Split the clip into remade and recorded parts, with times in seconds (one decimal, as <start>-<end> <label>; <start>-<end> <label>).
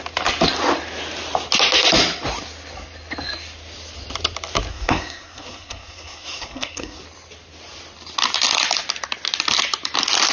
0.0-4.7 recorded; 4.7-7.0 remade; 7.0-10.3 recorded